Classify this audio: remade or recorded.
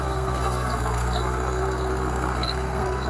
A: remade